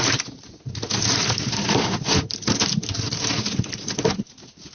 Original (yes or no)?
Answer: yes